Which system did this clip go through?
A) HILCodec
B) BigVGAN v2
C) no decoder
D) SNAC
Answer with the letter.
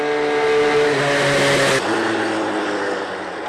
C